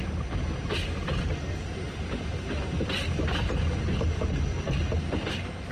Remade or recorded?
recorded